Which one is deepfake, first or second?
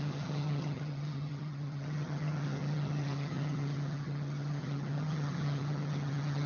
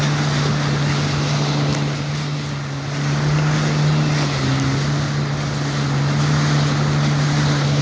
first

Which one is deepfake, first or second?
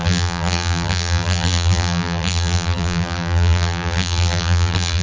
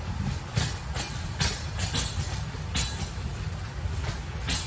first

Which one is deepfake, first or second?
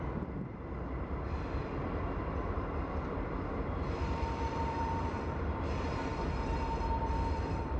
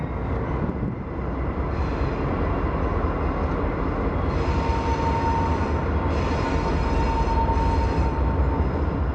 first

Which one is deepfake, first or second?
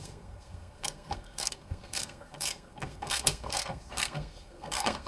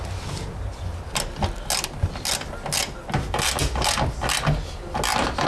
first